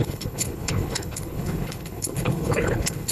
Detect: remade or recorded remade